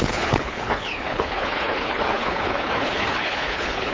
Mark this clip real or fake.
fake